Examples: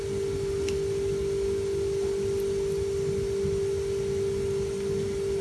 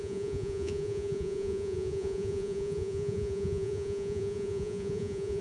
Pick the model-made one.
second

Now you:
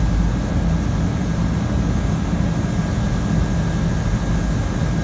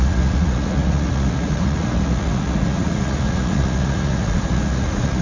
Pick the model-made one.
second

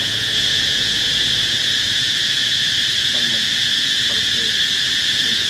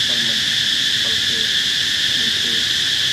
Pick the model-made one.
first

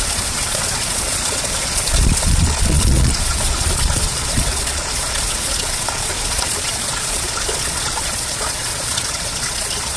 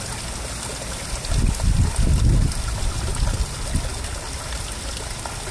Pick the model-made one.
first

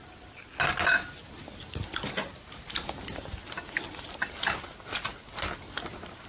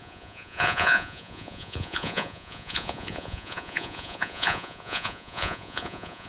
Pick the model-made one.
second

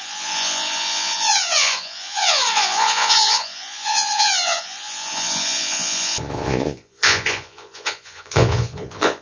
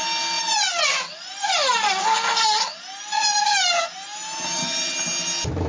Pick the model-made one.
first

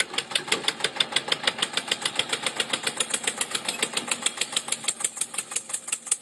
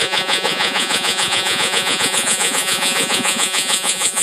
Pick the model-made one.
second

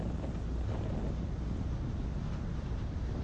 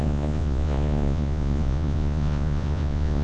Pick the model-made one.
second